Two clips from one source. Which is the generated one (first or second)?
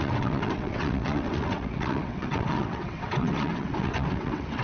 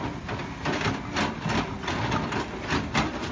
first